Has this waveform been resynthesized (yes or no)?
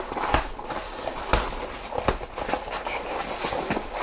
no